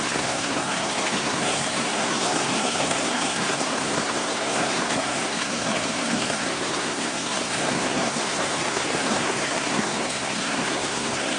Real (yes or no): no